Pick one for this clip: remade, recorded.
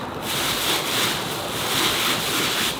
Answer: recorded